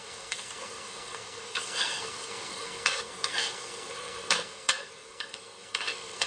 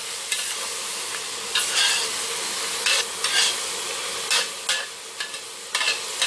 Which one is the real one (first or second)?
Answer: second